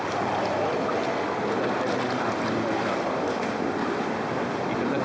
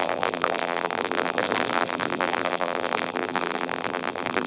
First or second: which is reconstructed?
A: second